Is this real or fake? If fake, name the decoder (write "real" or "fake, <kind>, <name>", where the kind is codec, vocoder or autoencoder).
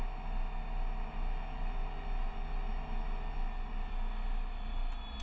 real